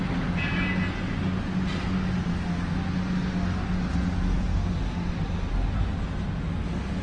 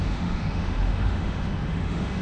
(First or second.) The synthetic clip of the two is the second